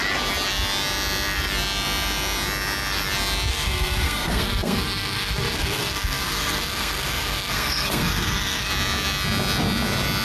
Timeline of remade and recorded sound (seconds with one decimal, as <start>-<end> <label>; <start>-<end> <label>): 0.0-3.5 recorded; 3.5-8.7 remade; 8.7-10.2 recorded